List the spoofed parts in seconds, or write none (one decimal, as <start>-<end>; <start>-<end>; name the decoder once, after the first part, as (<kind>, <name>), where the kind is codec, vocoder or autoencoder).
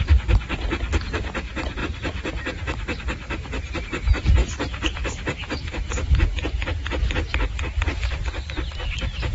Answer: none